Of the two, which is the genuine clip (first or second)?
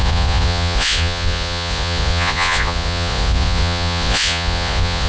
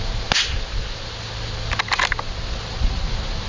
second